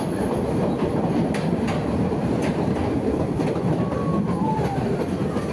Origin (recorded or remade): recorded